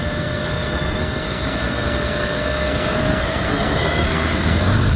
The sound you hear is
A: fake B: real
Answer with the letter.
A